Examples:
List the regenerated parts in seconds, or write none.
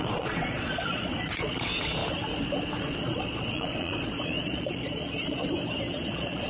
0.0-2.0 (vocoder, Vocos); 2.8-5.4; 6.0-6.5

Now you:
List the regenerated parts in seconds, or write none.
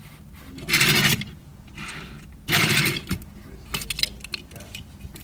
0.0-1.5 (vocoder, BigVGAN v2); 4.6-5.2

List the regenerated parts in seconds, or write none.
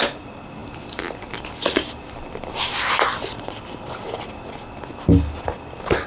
none